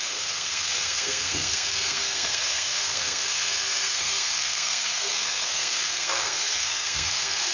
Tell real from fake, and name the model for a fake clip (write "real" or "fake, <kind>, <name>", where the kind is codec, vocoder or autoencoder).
fake, codec, SNAC